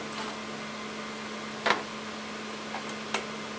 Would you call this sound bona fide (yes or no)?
yes